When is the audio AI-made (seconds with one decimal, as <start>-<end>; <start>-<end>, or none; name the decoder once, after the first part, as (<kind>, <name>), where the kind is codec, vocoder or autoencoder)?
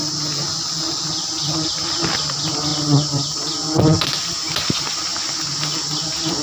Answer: none